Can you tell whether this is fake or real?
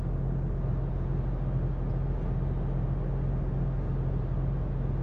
real